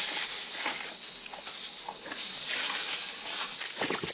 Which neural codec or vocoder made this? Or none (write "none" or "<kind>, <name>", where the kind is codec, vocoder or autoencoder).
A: none